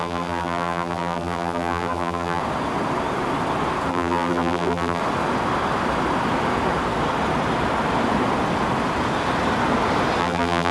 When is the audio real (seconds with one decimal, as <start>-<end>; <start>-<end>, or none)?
2.4-3.9; 5.0-10.2